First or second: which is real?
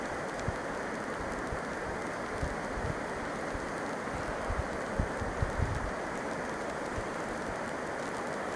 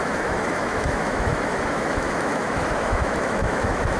first